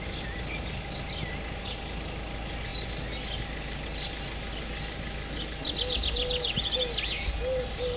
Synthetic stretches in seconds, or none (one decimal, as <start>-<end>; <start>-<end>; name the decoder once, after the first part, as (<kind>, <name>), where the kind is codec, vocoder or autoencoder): none